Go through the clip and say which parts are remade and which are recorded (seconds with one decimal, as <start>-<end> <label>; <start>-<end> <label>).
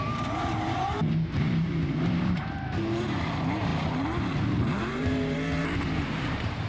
0.0-6.7 remade